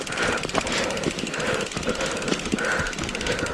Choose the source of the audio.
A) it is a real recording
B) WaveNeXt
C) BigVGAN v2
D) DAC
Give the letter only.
C